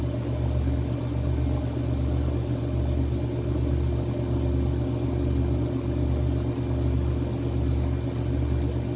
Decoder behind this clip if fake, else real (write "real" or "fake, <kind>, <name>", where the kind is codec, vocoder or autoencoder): real